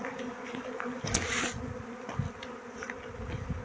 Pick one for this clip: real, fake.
fake